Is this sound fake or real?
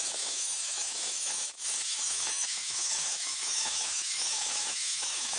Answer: fake